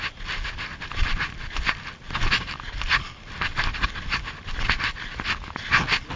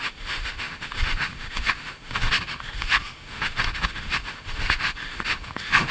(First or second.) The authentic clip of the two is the first